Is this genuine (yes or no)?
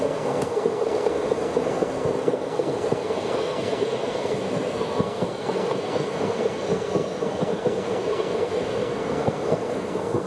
no